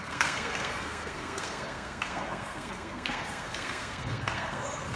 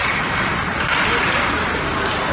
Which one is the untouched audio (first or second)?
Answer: second